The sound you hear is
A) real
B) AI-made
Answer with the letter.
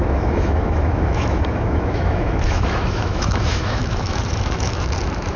B